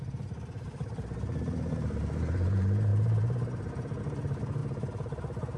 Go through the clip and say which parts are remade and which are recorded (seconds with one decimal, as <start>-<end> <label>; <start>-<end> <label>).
0.0-5.6 remade